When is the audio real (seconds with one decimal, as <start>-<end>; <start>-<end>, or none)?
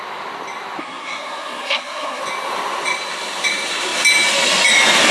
0.0-0.8; 2.2-5.1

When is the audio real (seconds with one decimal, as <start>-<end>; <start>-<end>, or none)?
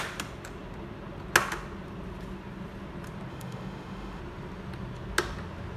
0.0-3.3; 4.2-5.8